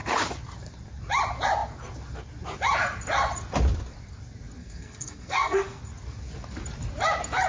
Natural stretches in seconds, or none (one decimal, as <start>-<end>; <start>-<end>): 0.0-4.6; 5.8-7.5